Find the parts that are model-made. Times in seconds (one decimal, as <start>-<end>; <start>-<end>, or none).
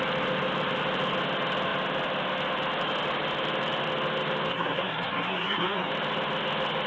4.5-5.9